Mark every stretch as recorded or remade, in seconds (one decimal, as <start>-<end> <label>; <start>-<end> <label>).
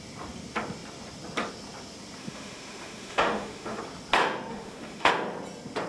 0.0-2.2 recorded; 2.2-3.8 remade; 3.8-4.5 recorded; 4.5-5.1 remade; 5.1-5.9 recorded